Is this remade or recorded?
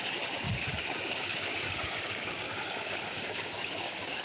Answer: remade